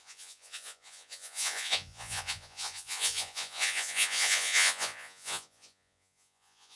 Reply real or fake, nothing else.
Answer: fake